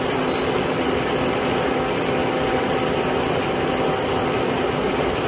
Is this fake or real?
real